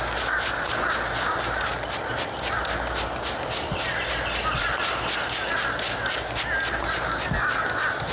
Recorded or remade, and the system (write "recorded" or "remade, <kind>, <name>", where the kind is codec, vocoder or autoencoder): recorded